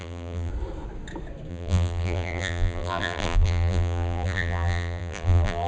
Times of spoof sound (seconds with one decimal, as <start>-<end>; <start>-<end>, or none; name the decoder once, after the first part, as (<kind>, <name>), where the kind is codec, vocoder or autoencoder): 0.0-0.5 (vocoder, BigVGAN v2); 1.5-5.7